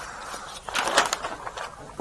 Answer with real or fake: real